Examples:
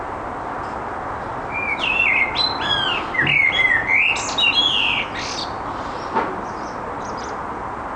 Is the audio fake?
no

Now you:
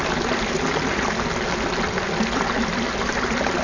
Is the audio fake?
no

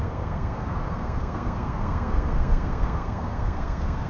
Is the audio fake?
yes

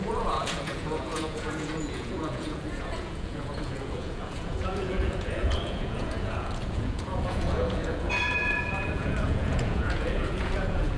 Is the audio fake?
yes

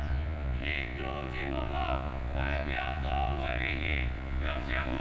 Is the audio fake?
yes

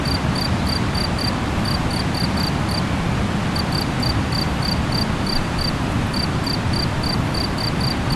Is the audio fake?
no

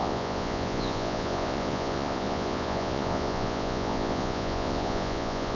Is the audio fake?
yes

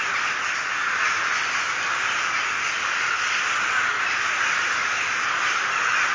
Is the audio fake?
no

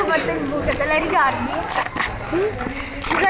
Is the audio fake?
no